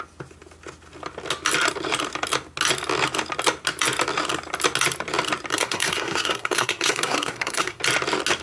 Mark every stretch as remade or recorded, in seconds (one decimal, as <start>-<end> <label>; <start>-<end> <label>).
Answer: 0.0-5.5 recorded; 5.5-7.8 remade; 7.8-8.4 recorded